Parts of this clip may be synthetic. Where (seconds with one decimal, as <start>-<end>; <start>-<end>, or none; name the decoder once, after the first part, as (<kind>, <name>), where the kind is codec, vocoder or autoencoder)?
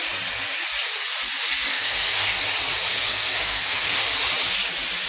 1.7-2.4 (codec, SNAC); 2.9-4.0